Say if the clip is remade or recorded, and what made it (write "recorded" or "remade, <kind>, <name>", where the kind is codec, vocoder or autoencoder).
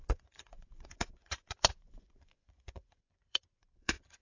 remade, vocoder, Vocos